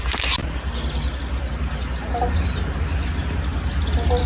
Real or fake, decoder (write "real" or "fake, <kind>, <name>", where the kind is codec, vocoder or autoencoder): real